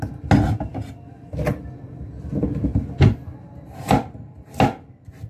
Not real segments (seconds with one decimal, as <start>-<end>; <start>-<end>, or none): none